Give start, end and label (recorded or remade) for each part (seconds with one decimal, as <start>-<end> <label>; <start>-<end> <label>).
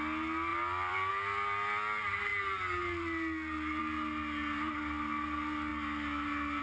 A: 0.0-0.5 recorded; 0.5-1.1 remade; 1.1-6.6 recorded